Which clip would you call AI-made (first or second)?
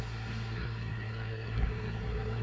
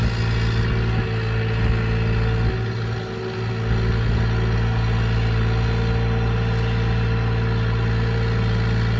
first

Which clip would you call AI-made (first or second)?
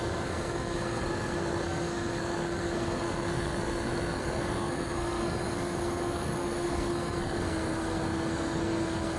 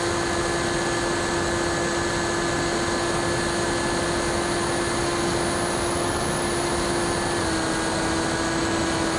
first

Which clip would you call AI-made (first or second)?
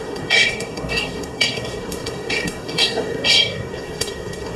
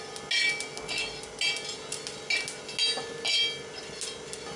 first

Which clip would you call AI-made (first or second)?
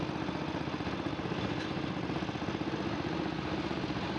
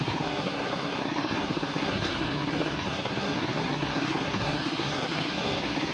second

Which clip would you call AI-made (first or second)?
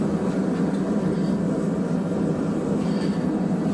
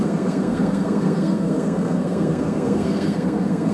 second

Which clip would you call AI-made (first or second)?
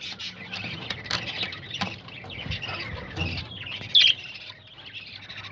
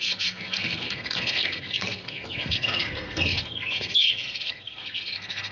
second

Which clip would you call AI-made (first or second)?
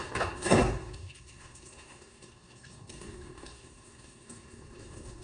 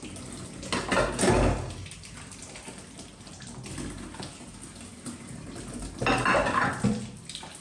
first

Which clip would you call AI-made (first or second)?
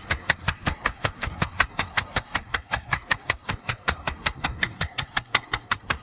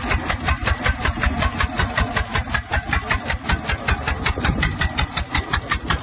first